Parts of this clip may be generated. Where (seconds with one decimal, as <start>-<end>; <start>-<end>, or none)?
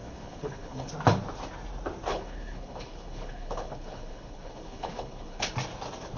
0.0-0.9; 2.1-5.5